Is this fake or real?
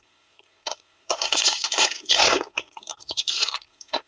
fake